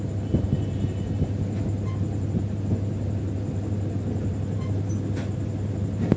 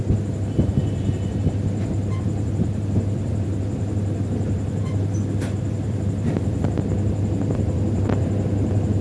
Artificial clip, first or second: second